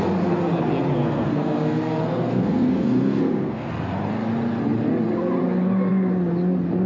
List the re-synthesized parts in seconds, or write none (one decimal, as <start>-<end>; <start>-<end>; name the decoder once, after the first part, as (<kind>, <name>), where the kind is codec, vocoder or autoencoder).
0.9-3.7 (codec, SNAC)